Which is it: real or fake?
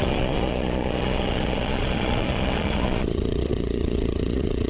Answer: fake